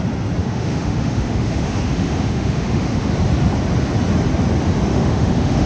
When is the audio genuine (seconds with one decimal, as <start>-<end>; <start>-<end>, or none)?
0.0-0.4; 3.1-4.9